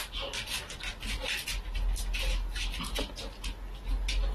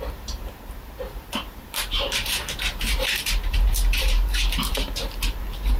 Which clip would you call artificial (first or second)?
second